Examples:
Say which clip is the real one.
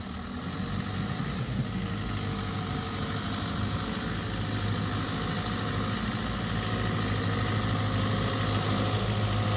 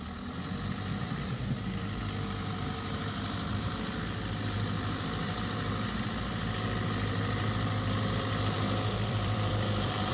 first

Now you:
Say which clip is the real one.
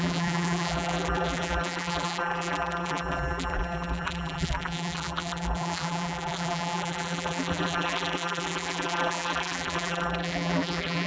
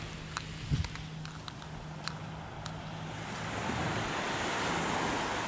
second